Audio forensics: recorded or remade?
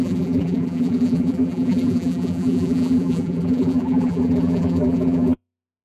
remade